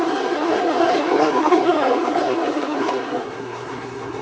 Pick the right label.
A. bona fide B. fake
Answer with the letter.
B